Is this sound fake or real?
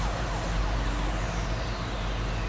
real